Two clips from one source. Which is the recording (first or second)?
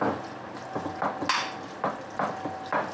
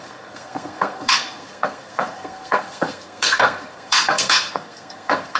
first